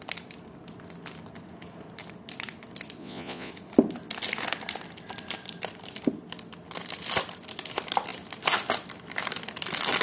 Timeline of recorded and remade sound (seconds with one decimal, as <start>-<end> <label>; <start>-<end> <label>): 0.0-3.0 recorded; 3.0-3.5 remade; 3.5-10.0 recorded